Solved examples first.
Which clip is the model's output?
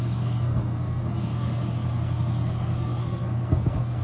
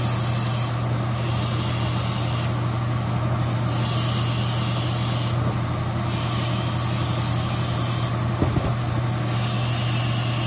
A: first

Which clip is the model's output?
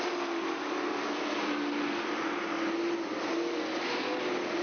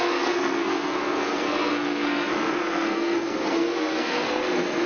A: second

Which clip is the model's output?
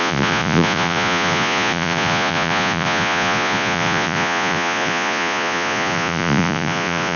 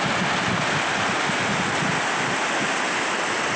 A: first